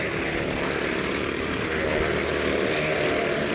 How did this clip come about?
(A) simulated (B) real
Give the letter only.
B